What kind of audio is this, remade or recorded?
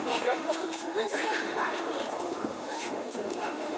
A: remade